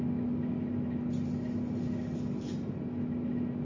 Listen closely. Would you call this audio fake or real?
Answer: real